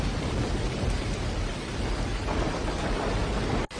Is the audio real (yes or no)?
yes